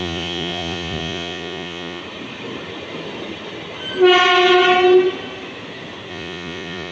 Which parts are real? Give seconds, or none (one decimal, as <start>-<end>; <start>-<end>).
2.0-6.1